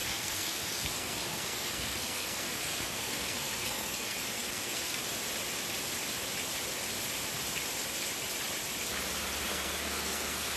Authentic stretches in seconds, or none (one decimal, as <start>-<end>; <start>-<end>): 5.0-9.5